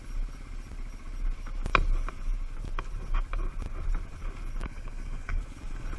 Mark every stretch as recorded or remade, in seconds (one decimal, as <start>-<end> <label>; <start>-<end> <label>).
0.0-4.6 recorded; 4.6-5.4 remade; 5.4-6.0 recorded